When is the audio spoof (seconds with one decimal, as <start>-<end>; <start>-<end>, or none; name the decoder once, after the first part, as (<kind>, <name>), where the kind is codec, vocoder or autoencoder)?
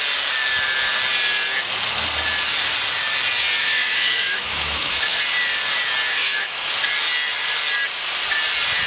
3.6-5.2 (autoencoder, DAC-VAE); 6.1-6.7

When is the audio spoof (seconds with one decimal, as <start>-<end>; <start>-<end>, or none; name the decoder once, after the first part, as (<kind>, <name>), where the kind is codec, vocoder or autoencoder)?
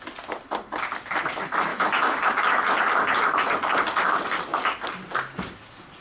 1.7-2.3 (autoencoder, DAC-VAE)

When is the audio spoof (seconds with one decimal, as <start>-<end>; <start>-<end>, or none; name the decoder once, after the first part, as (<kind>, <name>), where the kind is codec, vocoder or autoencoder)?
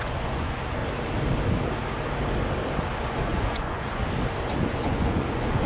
0.0-0.8 (vocoder, Vocos); 3.0-4.0; 4.7-5.7